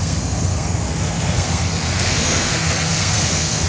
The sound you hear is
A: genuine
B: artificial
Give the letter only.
B